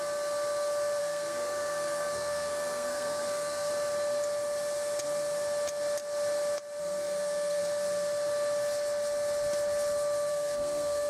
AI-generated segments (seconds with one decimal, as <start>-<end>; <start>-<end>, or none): 1.0-3.7; 6.8-7.6; 10.3-11.1